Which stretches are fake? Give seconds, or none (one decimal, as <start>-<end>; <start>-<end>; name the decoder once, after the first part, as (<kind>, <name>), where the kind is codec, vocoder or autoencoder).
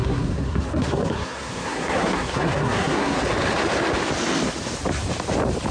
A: 0.0-3.2 (codec, SNAC)